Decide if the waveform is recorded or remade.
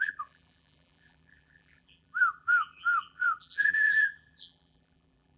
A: remade